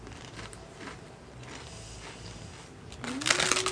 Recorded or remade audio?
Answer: recorded